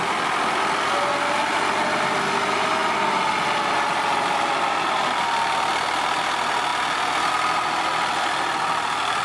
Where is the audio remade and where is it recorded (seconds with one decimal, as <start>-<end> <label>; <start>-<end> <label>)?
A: 0.0-9.2 recorded